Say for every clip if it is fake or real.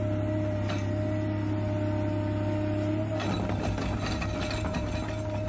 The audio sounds real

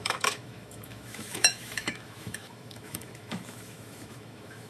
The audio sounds fake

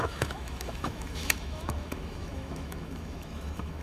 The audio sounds fake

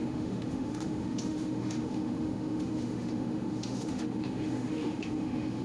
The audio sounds fake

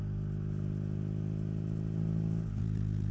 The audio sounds real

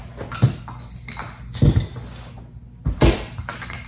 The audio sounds real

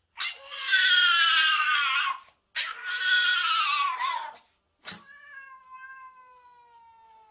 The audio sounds real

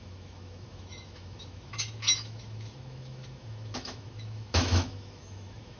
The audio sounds fake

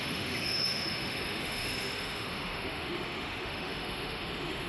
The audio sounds fake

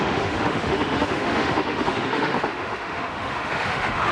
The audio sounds fake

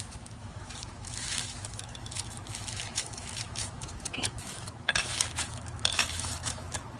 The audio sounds fake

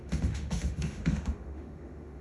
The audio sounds fake